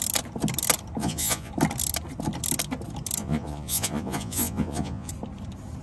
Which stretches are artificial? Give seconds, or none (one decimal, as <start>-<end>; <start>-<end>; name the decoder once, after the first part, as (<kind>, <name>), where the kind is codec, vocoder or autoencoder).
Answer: 1.0-1.5 (vocoder, Vocos); 3.2-5.1